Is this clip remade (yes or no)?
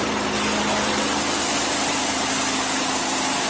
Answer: no